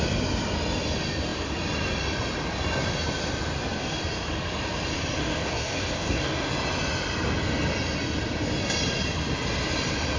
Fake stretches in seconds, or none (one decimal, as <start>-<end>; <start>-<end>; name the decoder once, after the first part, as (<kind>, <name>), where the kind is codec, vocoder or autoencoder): 5.2-6.5 (codec, DAC)